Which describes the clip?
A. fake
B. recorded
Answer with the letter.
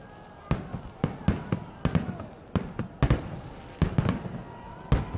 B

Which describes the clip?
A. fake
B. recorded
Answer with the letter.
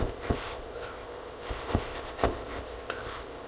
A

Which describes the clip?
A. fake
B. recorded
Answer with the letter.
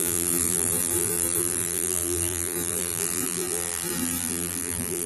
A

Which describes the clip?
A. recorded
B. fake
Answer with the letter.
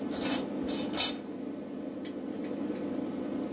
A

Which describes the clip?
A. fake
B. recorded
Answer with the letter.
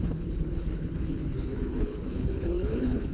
A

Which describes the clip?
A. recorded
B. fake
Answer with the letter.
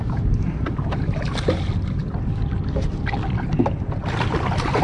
A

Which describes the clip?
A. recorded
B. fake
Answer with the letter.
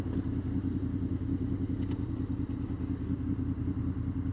A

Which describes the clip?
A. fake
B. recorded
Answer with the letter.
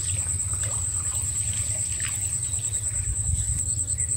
B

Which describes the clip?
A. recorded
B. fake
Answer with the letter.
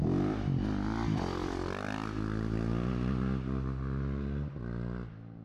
A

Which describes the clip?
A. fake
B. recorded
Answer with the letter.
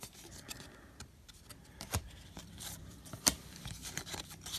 A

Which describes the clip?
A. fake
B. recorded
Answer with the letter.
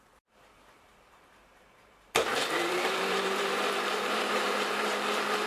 A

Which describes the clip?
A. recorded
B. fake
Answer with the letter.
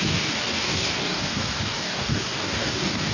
B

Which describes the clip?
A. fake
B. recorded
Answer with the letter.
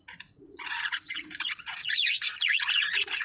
A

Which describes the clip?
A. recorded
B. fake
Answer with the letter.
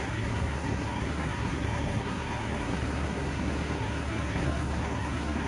B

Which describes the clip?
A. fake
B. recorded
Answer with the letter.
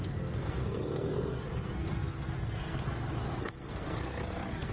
A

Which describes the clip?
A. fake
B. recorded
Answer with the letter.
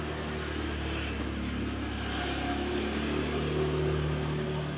B